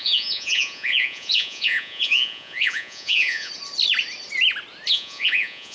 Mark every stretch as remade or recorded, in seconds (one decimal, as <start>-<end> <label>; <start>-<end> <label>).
0.0-3.5 remade; 3.5-4.9 recorded; 4.9-5.7 remade